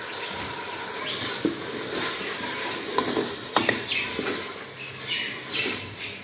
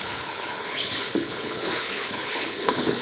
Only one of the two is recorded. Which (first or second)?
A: first